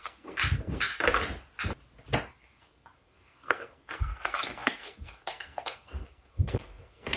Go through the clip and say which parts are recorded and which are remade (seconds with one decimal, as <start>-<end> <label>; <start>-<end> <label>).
0.0-0.9 remade; 0.9-2.4 recorded; 2.4-7.2 remade